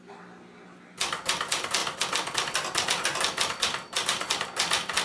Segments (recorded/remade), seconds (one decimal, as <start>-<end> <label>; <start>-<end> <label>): 0.0-5.0 recorded